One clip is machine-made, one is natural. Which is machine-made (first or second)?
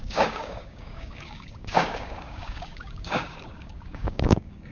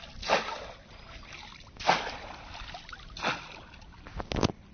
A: first